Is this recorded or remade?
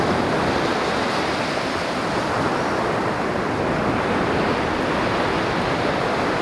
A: recorded